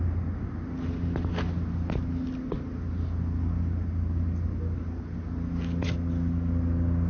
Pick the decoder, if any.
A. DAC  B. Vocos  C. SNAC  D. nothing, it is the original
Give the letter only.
D